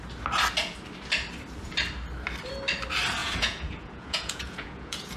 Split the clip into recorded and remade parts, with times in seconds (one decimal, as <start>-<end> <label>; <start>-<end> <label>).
0.0-3.2 recorded; 3.2-5.2 remade